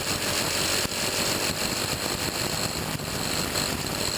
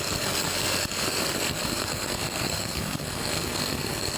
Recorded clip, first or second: first